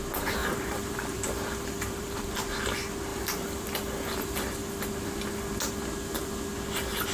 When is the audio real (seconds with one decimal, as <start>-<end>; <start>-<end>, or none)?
0.0-0.4; 2.2-3.1; 4.5-7.1